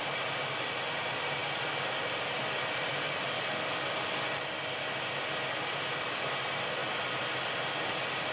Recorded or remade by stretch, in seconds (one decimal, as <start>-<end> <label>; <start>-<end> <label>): 0.0-1.4 recorded; 1.4-4.5 remade; 4.5-8.3 recorded